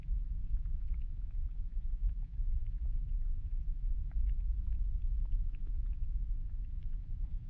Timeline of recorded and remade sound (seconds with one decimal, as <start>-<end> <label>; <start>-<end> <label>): 0.0-4.5 remade; 4.5-5.4 recorded; 5.4-7.5 remade